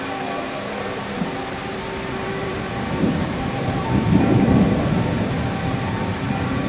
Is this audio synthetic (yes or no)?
yes